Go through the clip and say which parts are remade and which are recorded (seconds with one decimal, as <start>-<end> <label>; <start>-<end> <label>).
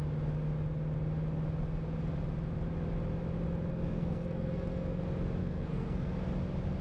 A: 0.0-3.7 recorded; 3.7-5.0 remade; 5.0-5.4 recorded; 5.4-6.1 remade; 6.1-6.8 recorded